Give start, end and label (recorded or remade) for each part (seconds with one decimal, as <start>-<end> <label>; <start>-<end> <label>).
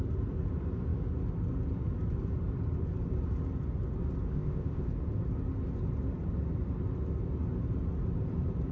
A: 0.0-4.3 recorded; 4.3-4.9 remade; 4.9-8.7 recorded